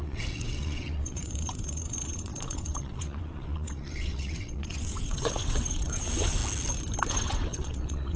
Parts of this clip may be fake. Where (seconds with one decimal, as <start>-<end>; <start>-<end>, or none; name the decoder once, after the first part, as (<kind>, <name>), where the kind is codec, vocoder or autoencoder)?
0.0-6.4 (vocoder, WaveNeXt); 7.1-8.2